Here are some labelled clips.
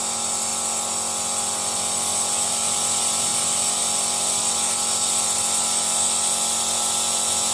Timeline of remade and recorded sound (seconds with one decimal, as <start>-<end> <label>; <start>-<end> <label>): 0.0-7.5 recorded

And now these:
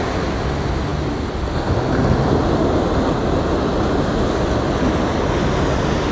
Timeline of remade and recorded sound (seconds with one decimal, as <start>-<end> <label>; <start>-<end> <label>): 0.0-6.1 recorded

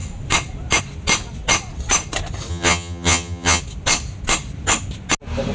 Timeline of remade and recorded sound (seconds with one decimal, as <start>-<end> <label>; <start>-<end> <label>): 0.0-2.5 recorded; 2.5-3.6 remade; 3.6-5.5 recorded

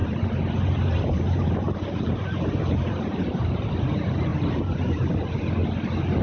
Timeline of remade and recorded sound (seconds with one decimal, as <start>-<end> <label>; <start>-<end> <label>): 0.0-3.7 remade; 3.7-4.3 recorded; 4.3-5.1 remade; 5.1-6.2 recorded

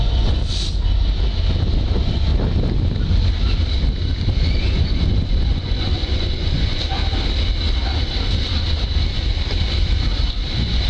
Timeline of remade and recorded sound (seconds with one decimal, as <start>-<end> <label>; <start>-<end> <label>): 0.0-0.4 remade; 0.4-1.9 recorded; 1.9-2.3 remade; 2.3-4.6 recorded; 4.6-7.0 remade; 7.0-10.3 recorded; 10.3-10.9 remade